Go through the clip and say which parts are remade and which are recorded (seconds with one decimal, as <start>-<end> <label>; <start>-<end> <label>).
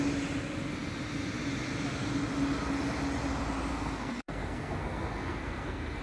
0.0-3.7 recorded; 3.7-6.0 remade